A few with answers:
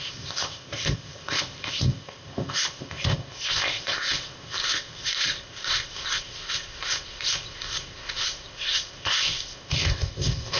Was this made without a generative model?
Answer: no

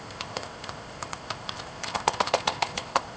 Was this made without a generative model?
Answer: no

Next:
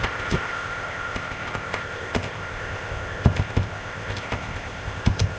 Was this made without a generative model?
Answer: no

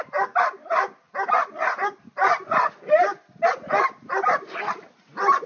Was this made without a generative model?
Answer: yes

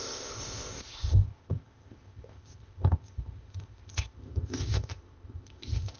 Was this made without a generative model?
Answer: no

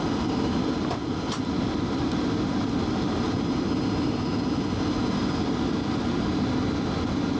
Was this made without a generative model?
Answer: yes